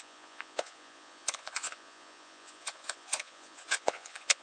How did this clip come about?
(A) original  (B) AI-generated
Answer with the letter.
B